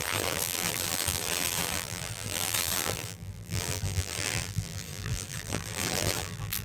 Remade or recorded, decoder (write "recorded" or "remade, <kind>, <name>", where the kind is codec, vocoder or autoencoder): remade, vocoder, BigVGAN v2